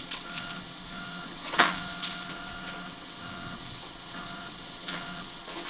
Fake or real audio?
fake